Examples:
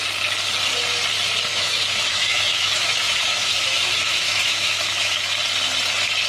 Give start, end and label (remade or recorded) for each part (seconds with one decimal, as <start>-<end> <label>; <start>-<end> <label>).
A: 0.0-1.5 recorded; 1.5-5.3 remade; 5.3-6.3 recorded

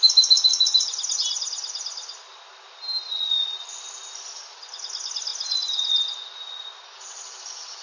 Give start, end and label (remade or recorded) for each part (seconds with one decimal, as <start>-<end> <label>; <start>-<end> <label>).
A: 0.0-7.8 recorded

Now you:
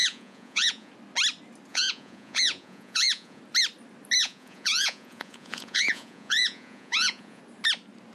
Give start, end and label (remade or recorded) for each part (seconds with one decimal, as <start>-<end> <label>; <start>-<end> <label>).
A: 0.0-0.9 remade; 0.9-1.7 recorded; 1.7-3.4 remade; 3.4-4.2 recorded; 4.2-7.4 remade; 7.4-8.1 recorded